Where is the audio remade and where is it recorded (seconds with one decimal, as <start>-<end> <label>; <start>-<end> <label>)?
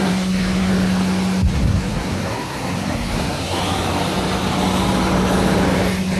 0.0-0.7 remade; 0.7-1.5 recorded; 1.5-3.6 remade; 3.6-6.2 recorded